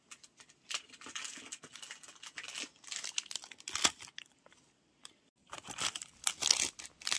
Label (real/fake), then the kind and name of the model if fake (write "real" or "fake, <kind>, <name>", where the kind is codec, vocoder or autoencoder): real